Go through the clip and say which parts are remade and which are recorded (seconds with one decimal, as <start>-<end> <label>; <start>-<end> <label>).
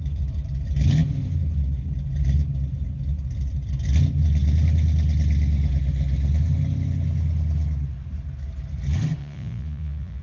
0.0-9.2 recorded; 9.2-10.2 remade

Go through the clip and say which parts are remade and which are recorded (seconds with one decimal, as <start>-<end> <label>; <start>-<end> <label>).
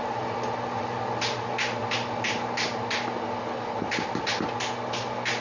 0.0-5.4 recorded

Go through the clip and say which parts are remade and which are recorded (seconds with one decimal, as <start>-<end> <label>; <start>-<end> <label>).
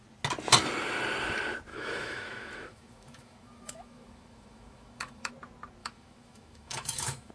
0.0-1.7 recorded; 1.7-5.3 remade; 5.3-5.8 recorded; 5.8-7.3 remade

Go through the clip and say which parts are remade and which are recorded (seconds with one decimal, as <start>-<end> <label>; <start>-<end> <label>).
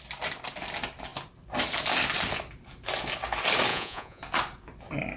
0.0-3.7 recorded; 3.7-4.2 remade; 4.2-5.2 recorded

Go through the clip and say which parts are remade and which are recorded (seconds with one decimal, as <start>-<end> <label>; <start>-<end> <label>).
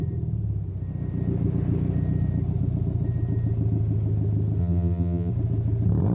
0.0-4.6 recorded; 4.6-5.3 remade; 5.3-6.1 recorded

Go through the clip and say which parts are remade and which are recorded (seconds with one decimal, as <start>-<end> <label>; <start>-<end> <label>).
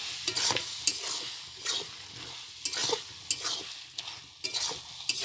0.0-5.2 recorded